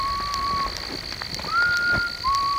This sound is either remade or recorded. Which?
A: recorded